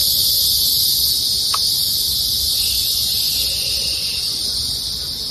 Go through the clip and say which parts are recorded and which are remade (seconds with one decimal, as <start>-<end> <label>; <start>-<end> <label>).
0.0-2.5 recorded; 2.5-4.8 remade; 4.8-5.3 recorded